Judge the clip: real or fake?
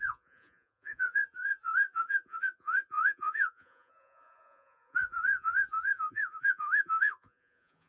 fake